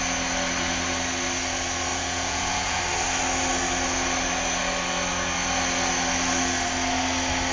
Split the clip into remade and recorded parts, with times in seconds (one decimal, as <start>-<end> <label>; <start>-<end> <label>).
0.0-1.9 recorded; 1.9-2.8 remade; 2.8-7.5 recorded